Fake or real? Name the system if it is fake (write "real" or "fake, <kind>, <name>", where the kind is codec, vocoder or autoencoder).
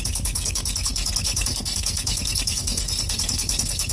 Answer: fake, codec, SNAC